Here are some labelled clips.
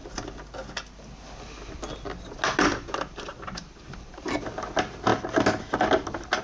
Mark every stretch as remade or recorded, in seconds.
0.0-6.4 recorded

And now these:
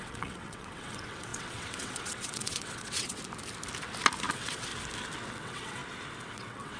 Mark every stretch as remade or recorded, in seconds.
0.0-3.2 remade; 3.2-4.3 recorded; 4.3-4.7 remade; 4.7-5.3 recorded; 5.3-5.8 remade; 5.8-6.3 recorded; 6.3-6.8 remade

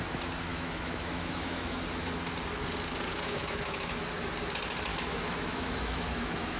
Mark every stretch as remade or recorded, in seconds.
0.0-0.5 recorded; 0.5-1.8 remade; 1.8-3.1 recorded; 3.1-3.9 remade; 3.9-4.9 recorded; 4.9-6.6 remade

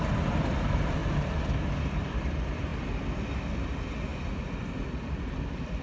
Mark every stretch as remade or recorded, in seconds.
0.0-1.0 remade; 1.0-2.2 recorded; 2.2-2.7 remade; 2.7-3.4 recorded; 3.4-4.1 remade; 4.1-4.6 recorded; 4.6-5.8 remade

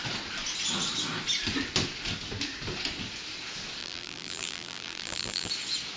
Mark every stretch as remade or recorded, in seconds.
0.0-3.8 recorded; 3.8-5.5 remade; 5.5-6.0 recorded